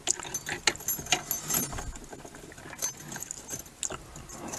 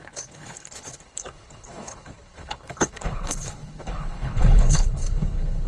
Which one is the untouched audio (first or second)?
first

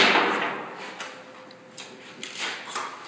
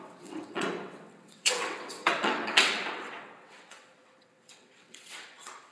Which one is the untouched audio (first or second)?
first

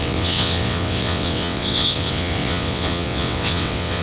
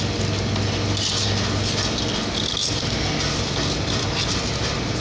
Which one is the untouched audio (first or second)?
second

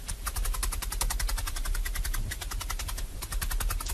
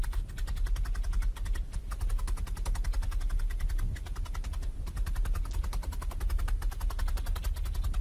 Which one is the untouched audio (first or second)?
second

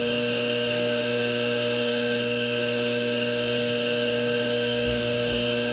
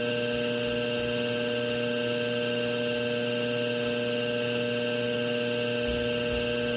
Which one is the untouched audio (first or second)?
second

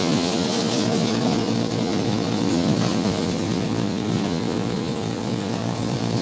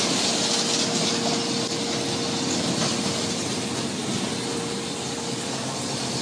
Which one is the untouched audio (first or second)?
second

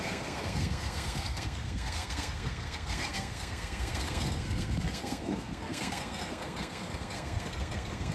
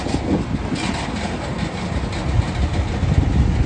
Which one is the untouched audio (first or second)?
second